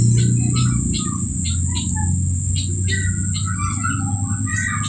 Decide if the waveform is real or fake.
real